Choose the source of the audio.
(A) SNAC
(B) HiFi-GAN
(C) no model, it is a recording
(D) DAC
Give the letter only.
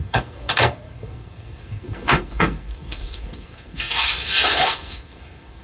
A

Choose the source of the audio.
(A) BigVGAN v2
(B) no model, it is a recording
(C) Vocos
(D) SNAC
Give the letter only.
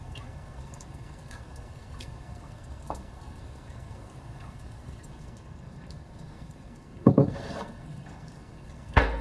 D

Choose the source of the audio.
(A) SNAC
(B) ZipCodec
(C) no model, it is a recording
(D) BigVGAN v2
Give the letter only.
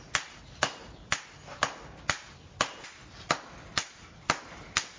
C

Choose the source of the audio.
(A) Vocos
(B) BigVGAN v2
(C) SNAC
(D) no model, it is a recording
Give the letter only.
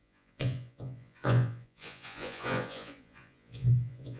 A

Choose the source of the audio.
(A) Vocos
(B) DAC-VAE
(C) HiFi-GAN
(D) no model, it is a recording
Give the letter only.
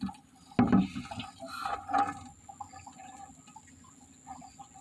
D